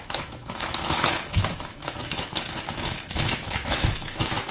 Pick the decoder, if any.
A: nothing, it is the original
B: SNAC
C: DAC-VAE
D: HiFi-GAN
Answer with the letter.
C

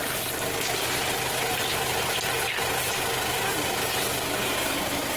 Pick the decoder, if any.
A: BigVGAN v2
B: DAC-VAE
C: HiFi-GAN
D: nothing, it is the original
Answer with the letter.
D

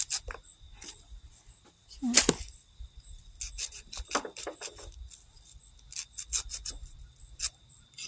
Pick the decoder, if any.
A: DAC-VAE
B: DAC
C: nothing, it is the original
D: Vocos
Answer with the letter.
C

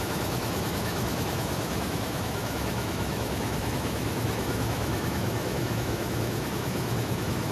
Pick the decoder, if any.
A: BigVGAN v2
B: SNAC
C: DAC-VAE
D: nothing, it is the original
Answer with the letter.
C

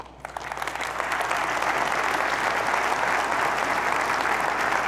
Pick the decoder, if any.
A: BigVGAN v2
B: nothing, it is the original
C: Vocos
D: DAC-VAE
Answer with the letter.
B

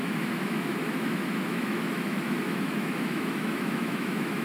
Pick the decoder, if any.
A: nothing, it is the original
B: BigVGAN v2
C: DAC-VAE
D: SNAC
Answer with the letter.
C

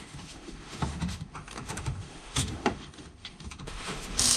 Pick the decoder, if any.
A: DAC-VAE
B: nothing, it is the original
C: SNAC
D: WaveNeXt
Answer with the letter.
A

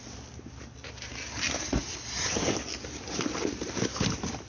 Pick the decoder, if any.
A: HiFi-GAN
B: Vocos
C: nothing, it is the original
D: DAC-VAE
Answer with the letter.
C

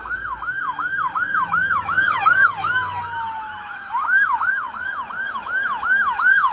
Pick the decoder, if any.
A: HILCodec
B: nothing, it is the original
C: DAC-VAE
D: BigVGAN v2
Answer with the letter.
C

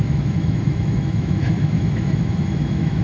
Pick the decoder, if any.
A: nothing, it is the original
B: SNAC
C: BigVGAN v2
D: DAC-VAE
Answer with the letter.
D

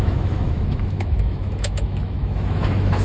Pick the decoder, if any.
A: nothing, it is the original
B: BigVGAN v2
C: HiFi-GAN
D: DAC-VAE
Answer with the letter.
D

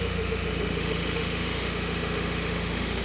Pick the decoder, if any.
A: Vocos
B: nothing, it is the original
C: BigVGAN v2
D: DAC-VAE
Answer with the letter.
D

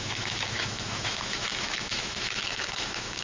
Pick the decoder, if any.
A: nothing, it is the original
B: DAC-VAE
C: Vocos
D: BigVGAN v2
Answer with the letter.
B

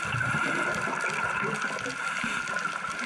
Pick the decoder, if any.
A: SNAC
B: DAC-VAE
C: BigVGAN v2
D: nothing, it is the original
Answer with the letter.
D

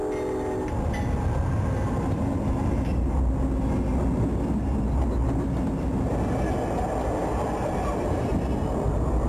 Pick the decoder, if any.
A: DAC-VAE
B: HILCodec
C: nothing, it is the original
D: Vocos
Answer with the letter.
C